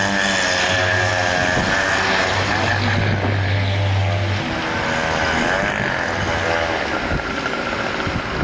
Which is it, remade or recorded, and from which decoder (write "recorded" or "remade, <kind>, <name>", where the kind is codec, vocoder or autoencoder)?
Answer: recorded